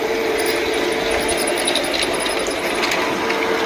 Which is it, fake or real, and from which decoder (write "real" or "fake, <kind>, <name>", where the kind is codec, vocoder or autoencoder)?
real